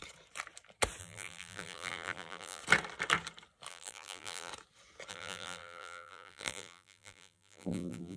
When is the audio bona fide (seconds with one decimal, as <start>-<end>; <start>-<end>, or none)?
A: 0.0-1.0; 2.6-3.7; 4.5-5.1